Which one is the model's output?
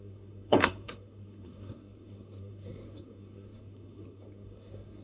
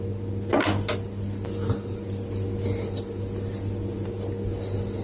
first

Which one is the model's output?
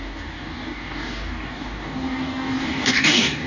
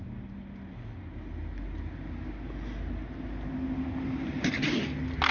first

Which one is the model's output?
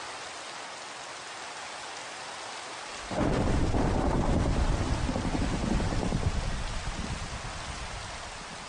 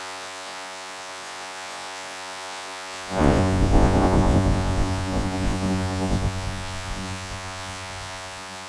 second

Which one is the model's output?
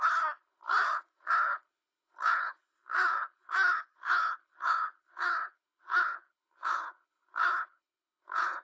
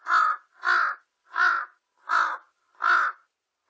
first